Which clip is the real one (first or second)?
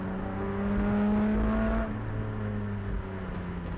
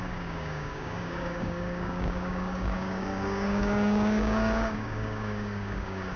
first